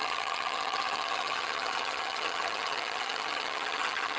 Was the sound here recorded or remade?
remade